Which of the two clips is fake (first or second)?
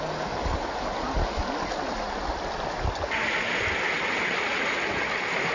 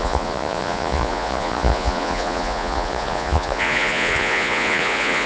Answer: second